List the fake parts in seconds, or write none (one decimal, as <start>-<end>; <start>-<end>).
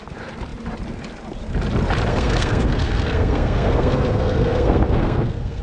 2.1-5.6